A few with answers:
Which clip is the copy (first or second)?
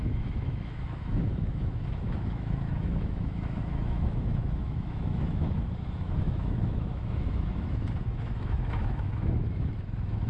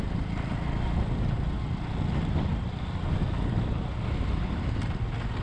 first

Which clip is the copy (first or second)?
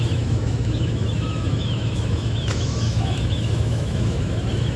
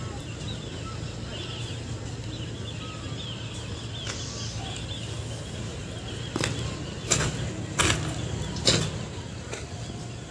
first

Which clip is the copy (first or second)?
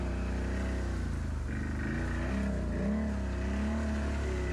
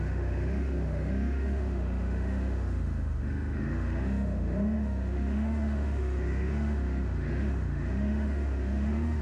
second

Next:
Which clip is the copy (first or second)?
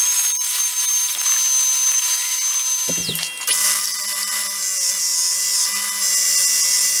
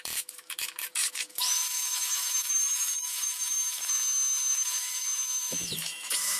second